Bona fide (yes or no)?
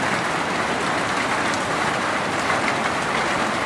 yes